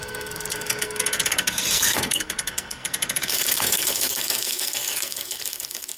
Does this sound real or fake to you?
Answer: fake